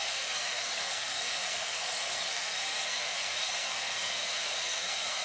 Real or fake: fake